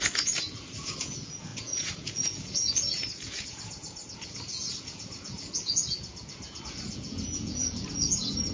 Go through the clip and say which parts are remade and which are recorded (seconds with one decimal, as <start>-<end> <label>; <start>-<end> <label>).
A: 0.0-8.5 remade